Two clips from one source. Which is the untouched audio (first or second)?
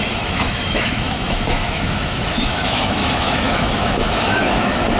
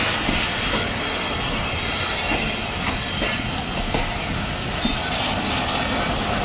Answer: second